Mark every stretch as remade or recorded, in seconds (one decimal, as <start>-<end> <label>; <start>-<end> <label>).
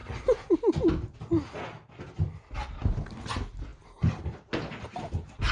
0.0-5.5 recorded